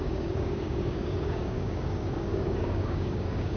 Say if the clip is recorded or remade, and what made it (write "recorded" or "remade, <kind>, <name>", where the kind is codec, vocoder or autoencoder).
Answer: remade, codec, DAC